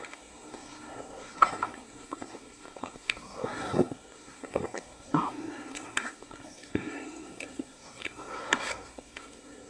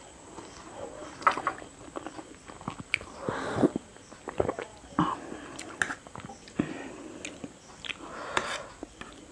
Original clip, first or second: second